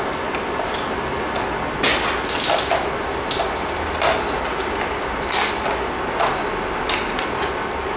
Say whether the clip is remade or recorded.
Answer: recorded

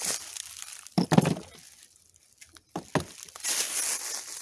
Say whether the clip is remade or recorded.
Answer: recorded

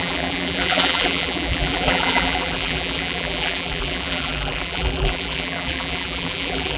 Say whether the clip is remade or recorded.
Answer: remade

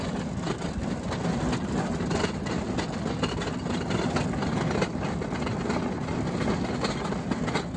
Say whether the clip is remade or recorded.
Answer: recorded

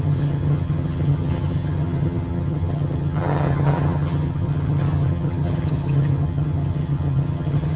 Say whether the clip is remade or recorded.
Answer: remade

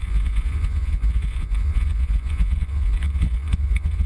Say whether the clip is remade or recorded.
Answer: remade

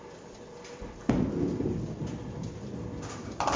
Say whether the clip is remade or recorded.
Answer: recorded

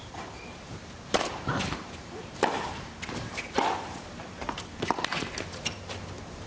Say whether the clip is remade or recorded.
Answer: remade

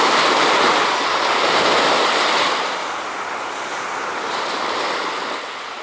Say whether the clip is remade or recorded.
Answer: recorded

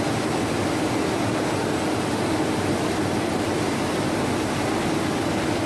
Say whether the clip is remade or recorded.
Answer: recorded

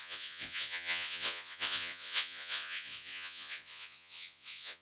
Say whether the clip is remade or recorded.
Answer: remade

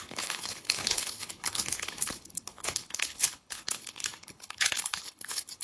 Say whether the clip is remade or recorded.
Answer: remade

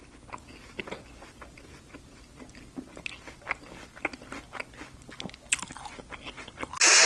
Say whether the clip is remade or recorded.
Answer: recorded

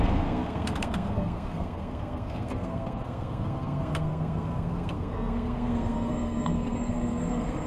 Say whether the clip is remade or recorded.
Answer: remade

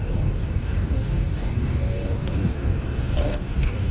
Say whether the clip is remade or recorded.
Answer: remade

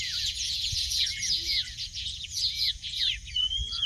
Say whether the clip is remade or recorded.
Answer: remade